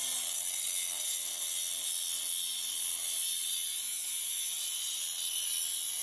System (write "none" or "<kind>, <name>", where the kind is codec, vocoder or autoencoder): none